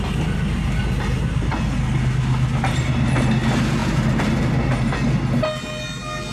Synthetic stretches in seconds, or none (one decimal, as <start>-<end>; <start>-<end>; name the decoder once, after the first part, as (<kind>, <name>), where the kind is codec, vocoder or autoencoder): 3.8-4.9 (vocoder, BigVGAN v2)